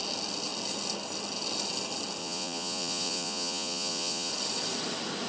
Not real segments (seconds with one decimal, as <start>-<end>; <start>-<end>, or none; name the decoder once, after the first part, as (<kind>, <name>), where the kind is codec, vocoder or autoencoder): 2.2-4.3 (vocoder, Vocos)